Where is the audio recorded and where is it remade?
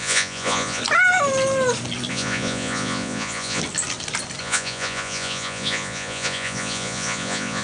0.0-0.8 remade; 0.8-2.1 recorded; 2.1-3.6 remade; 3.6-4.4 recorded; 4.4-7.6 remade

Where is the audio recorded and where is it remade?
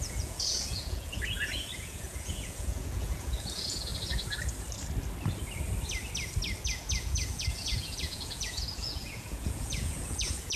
0.0-3.9 remade; 3.9-6.6 recorded; 6.6-10.6 remade